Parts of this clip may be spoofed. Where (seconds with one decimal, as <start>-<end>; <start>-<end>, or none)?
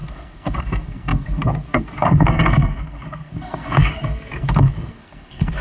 0.0-5.6